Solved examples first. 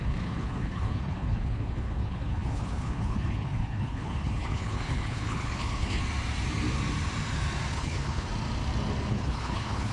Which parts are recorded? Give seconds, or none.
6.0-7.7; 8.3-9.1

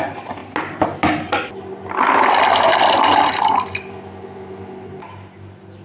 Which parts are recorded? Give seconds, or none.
0.0-5.8